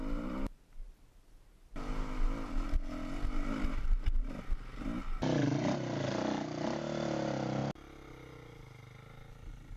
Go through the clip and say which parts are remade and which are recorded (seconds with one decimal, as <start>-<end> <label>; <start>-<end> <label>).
0.0-9.8 recorded